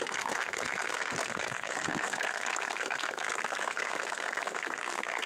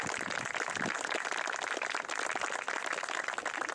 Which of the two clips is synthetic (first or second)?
first